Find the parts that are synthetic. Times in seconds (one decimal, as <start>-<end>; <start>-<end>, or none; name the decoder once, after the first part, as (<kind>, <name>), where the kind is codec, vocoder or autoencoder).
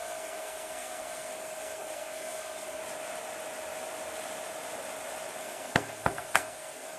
0.0-2.8 (codec, SNAC); 5.4-7.0